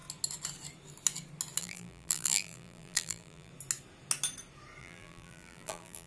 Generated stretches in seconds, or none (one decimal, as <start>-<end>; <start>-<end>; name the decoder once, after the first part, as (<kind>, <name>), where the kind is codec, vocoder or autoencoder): 1.6-3.5 (vocoder, BigVGAN v2); 4.8-6.1